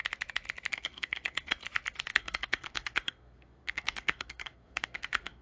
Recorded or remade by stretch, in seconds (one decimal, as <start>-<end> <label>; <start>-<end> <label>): 0.0-0.7 recorded; 0.7-1.5 remade; 1.5-2.1 recorded; 2.1-5.4 remade